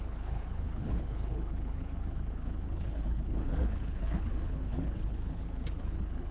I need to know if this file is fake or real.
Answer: fake